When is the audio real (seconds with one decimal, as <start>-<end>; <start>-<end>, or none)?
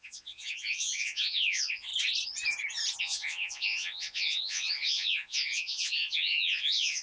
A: 1.9-3.0